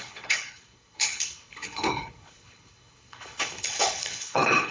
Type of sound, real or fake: fake